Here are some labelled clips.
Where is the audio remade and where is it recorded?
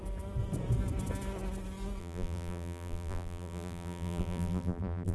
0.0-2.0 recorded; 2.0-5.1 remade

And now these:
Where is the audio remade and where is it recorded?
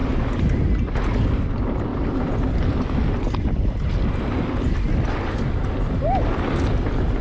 0.0-1.9 recorded; 1.9-2.8 remade; 2.8-7.2 recorded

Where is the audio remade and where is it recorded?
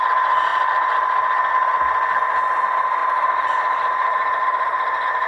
0.0-3.0 recorded; 3.0-5.3 remade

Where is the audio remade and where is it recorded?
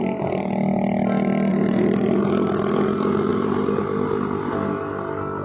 0.0-1.5 recorded; 1.5-2.2 remade; 2.2-3.3 recorded; 3.3-3.8 remade; 3.8-5.4 recorded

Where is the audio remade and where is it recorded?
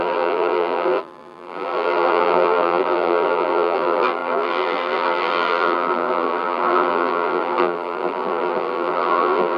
0.0-9.6 remade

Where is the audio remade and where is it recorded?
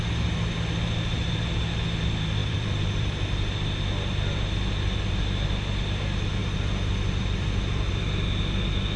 0.0-2.4 recorded; 2.4-3.2 remade; 3.2-6.4 recorded; 6.4-7.9 remade; 7.9-9.0 recorded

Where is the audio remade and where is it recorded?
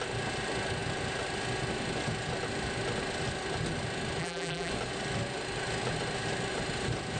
0.0-4.2 recorded; 4.2-4.7 remade; 4.7-7.2 recorded